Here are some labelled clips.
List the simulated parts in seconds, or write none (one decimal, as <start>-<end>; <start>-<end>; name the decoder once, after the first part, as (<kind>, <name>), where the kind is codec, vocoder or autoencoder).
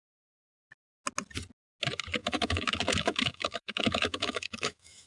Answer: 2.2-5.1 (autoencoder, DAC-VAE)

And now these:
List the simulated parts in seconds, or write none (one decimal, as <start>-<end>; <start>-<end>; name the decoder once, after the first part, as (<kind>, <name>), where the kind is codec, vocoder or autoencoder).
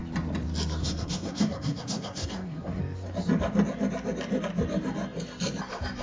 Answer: 0.8-2.8 (codec, SNAC)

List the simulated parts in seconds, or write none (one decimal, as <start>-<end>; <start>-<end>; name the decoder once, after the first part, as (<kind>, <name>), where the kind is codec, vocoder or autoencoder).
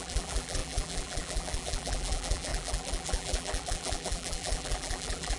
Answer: 0.0-5.4 (vocoder, BigVGAN v2)